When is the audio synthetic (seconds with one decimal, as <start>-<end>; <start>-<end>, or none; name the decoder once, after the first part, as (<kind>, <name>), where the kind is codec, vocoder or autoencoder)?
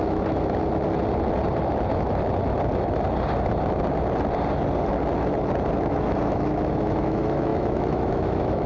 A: 0.0-0.6 (autoencoder, DAC-VAE); 5.8-8.7